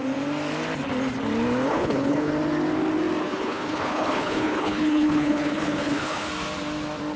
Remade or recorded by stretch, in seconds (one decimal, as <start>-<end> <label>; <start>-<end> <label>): 0.0-1.7 recorded; 1.7-2.3 remade; 2.3-3.2 recorded; 3.2-6.3 remade; 6.3-7.2 recorded